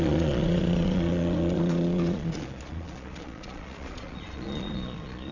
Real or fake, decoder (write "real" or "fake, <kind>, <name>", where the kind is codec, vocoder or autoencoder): fake, vocoder, Vocos